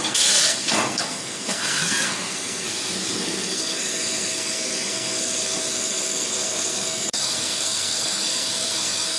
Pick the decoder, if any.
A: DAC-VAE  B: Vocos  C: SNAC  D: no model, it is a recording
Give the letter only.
C